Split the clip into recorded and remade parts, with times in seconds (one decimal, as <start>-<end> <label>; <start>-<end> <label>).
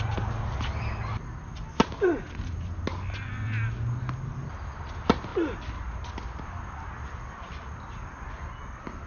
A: 0.0-9.1 recorded